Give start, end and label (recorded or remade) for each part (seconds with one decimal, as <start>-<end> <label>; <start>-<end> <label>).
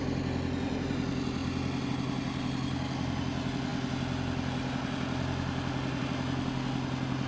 0.0-7.3 recorded